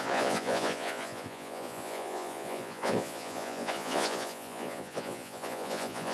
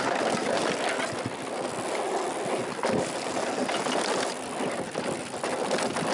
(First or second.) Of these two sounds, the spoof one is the first